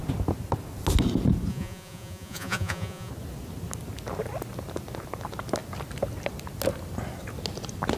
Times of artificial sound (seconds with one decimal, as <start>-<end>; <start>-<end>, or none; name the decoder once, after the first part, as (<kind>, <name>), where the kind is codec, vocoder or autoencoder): 1.5-3.1 (vocoder, Vocos)